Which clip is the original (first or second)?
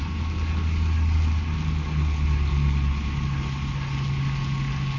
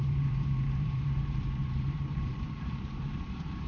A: first